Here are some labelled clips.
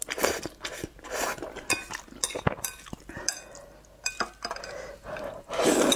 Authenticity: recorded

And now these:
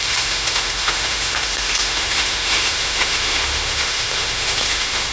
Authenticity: remade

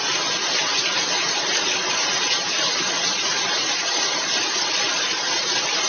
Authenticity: recorded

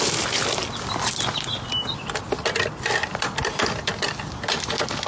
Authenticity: recorded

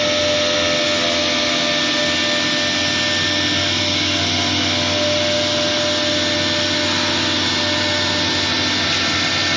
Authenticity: recorded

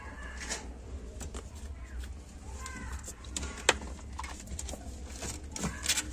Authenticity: recorded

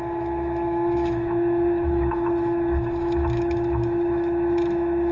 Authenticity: remade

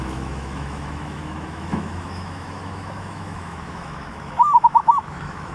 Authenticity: remade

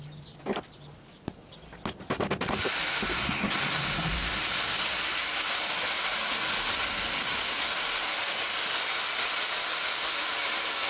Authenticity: recorded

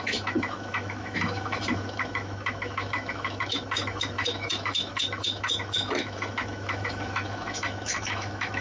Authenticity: remade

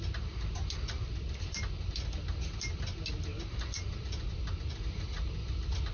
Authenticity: recorded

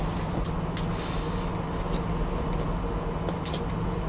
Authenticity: recorded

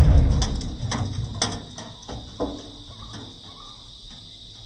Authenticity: recorded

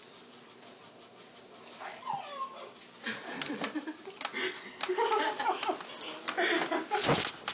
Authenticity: recorded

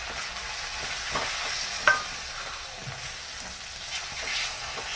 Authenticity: recorded